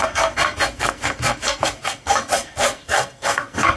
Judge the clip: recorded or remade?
remade